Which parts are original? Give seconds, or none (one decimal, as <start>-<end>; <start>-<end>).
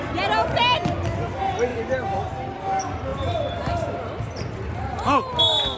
0.0-1.7; 2.2-5.8